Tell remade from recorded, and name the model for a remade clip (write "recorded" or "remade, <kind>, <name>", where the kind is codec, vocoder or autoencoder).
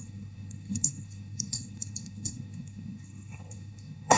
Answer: remade, codec, SNAC